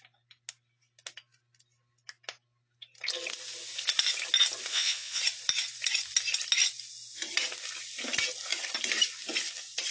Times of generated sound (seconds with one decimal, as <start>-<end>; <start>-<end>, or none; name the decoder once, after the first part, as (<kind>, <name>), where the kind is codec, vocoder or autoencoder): 4.7-5.2 (vocoder, Vocos)